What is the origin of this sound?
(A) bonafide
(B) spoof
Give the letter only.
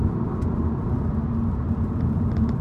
A